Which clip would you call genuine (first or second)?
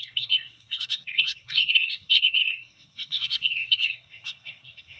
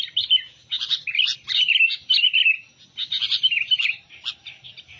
second